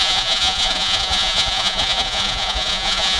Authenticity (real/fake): fake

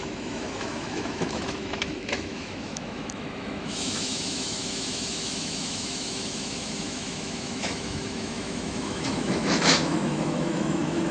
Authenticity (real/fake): fake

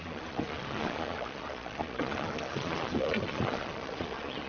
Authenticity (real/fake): fake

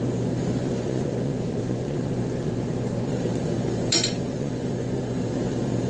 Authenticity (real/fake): fake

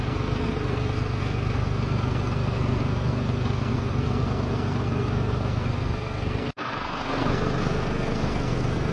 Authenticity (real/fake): fake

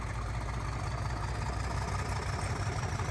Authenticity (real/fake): real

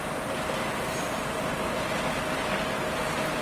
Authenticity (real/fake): fake